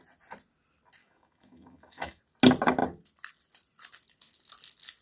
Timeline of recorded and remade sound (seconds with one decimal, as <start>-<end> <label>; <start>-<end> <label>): 0.0-1.0 recorded; 1.0-2.2 remade; 2.2-5.0 recorded